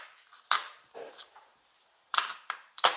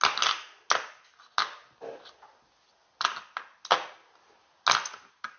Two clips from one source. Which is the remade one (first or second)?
first